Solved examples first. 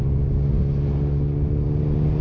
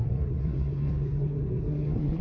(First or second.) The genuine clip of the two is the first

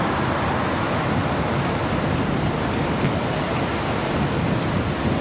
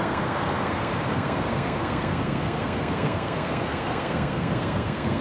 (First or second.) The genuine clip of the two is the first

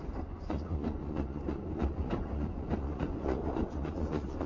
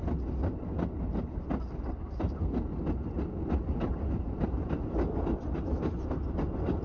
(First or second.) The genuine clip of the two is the second